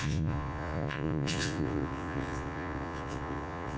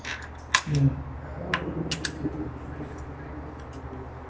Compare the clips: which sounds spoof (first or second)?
first